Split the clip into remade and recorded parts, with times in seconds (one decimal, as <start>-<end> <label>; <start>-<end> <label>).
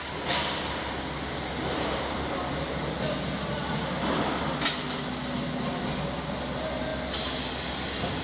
0.0-8.2 recorded